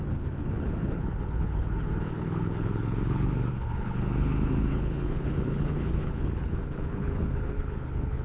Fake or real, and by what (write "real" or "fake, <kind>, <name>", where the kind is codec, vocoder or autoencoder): fake, codec, HILCodec